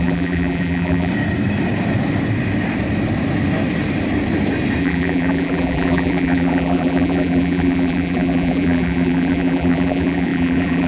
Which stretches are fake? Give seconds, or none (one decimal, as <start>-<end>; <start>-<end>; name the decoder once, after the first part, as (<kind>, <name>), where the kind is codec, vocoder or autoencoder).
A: 0.0-1.1 (vocoder, BigVGAN v2); 4.8-10.9